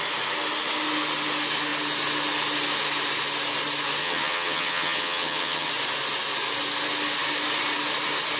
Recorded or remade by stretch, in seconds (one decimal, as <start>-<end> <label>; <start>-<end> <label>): 0.0-4.0 recorded; 4.0-5.7 remade; 5.7-8.4 recorded